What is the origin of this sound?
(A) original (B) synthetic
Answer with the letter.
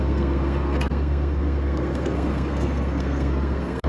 B